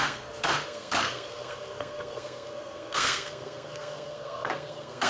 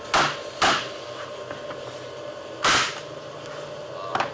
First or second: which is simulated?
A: first